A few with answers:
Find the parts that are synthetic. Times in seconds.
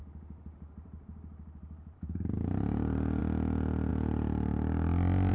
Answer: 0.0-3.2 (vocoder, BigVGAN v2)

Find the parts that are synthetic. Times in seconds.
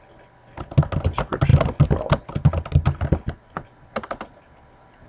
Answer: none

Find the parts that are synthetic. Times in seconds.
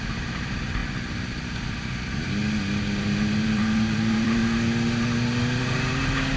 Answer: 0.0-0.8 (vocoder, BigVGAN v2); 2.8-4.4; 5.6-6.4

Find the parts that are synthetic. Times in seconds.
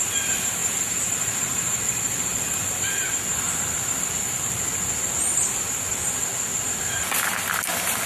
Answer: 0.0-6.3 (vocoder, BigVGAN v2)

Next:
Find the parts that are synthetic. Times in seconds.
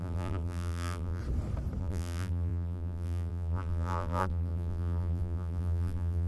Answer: 0.0-1.2 (vocoder, BigVGAN v2); 1.8-6.3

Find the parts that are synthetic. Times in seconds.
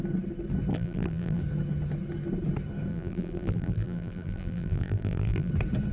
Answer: 0.7-1.4 (vocoder, BigVGAN v2); 2.9-5.5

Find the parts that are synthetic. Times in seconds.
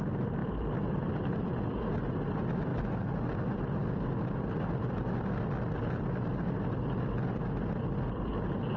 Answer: 0.4-1.6 (vocoder, BigVGAN v2)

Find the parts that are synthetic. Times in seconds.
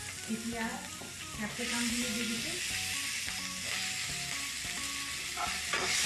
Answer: 0.7-1.5 (vocoder, BigVGAN v2)